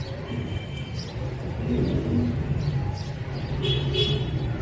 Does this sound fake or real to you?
real